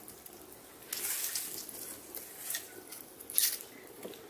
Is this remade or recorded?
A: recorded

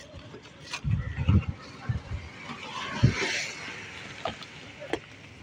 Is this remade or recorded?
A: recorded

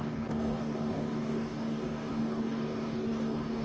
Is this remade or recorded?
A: remade